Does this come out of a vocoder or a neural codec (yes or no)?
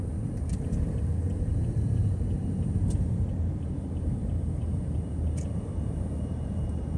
yes